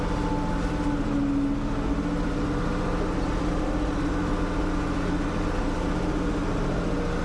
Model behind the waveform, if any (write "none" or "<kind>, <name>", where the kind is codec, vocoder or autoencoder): none